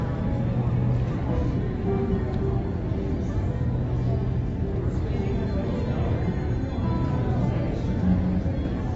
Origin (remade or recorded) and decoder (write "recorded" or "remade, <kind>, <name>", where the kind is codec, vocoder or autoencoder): recorded